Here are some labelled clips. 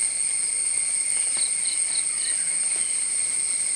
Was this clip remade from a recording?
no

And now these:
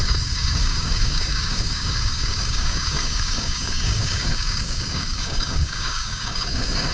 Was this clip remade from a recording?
yes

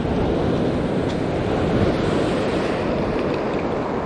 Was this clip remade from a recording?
no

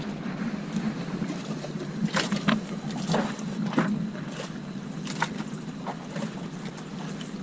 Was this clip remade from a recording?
no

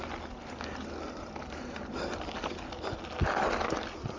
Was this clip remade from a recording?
no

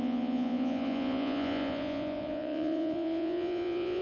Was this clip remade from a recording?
yes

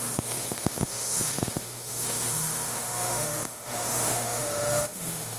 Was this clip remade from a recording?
yes